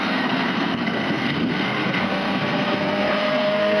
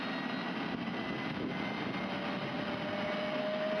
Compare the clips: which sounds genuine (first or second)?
second